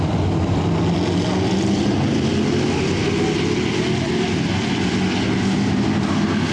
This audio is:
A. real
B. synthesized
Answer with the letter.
A